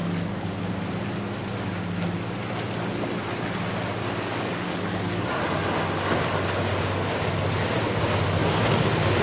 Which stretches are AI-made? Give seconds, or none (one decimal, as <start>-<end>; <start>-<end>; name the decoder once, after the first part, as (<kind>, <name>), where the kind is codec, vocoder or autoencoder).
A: 0.0-0.7 (codec, DAC); 4.0-5.4